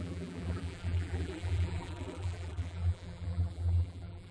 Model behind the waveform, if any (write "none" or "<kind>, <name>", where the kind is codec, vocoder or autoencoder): vocoder, BigVGAN v2